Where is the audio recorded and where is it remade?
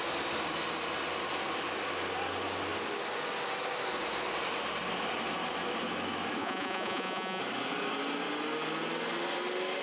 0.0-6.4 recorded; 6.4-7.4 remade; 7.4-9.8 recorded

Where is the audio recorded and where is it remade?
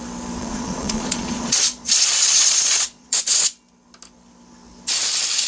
0.0-0.4 recorded; 0.4-3.2 remade; 3.2-5.5 recorded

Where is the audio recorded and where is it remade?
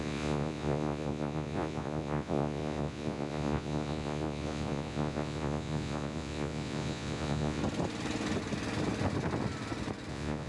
0.0-7.6 remade; 7.6-10.1 recorded; 10.1-10.5 remade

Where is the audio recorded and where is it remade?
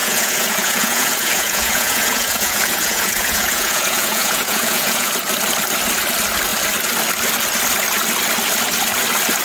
0.0-5.1 remade; 5.1-9.4 recorded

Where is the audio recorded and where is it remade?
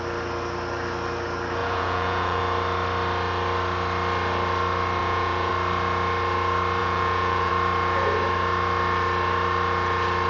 0.0-1.6 recorded; 1.6-2.4 remade; 2.4-5.0 recorded; 5.0-5.5 remade; 5.5-6.8 recorded; 6.8-7.5 remade; 7.5-10.3 recorded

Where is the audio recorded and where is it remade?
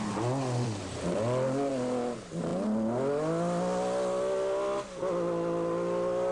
0.0-6.3 recorded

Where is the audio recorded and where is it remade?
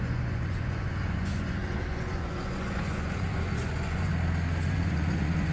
0.0-4.1 remade; 4.1-4.7 recorded; 4.7-5.5 remade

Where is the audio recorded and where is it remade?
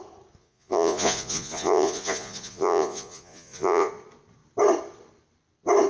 0.0-0.4 recorded; 0.4-3.9 remade; 3.9-5.9 recorded